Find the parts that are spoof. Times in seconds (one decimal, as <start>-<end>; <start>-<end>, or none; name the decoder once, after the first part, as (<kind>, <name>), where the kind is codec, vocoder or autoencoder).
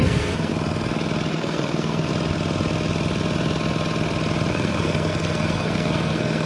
0.0-0.5 (codec, SNAC); 1.3-2.1; 4.5-6.5